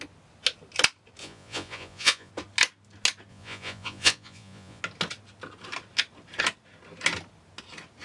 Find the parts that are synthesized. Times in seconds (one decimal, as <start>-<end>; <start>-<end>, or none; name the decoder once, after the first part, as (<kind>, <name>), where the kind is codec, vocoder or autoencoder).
1.2-2.3 (vocoder, Vocos); 3.3-4.8